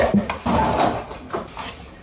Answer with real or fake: real